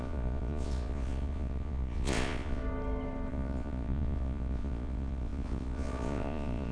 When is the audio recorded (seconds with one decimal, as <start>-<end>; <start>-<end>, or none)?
2.6-3.3